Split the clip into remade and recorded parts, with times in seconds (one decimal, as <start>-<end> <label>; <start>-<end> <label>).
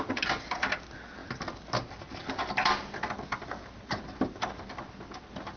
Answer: 0.0-5.6 recorded